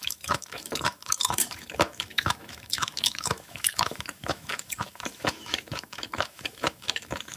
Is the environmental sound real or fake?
fake